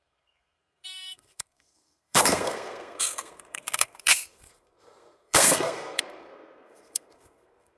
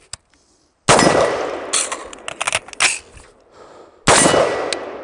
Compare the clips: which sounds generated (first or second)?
first